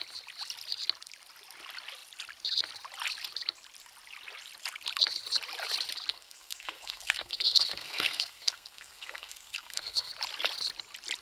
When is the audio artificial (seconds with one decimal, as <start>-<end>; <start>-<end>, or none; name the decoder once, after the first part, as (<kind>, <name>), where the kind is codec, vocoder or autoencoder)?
6.1-10.1 (codec, SNAC)